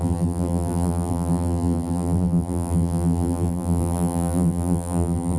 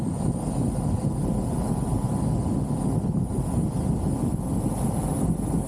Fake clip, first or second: first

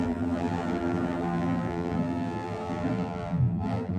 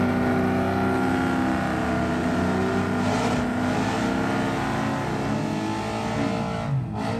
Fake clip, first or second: first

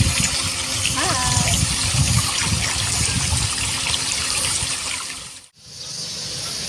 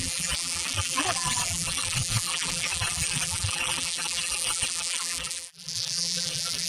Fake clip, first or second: second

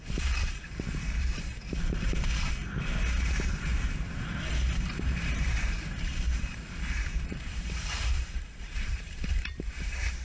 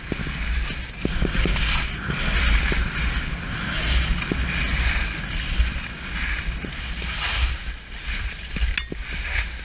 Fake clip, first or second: first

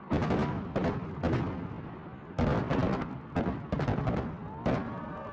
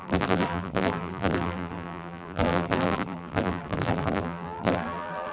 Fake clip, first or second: second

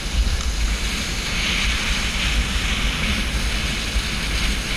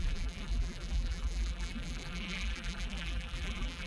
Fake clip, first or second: second